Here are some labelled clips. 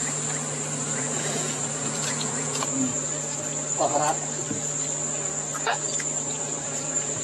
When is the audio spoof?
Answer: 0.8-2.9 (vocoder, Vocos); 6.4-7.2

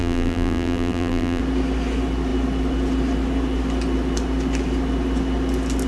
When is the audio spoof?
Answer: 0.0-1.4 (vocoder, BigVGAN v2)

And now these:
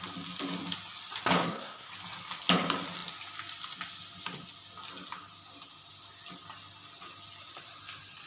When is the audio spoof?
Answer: 1.4-1.9 (codec, SNAC)

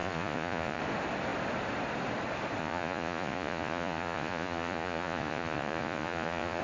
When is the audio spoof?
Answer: 0.0-0.8 (vocoder, Vocos); 2.6-6.6